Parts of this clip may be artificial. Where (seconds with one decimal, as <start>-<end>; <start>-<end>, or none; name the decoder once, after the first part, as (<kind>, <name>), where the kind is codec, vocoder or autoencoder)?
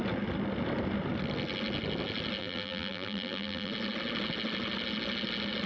2.4-3.7 (vocoder, BigVGAN v2)